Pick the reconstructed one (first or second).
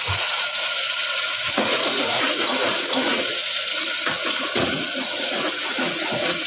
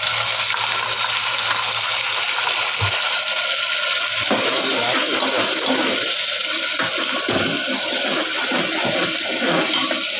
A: first